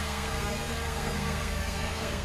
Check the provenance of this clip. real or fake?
fake